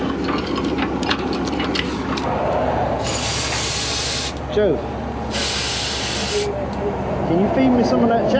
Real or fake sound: real